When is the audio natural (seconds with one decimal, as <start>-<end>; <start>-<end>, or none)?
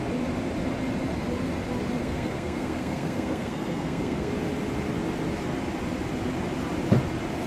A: 0.0-2.0; 4.3-7.5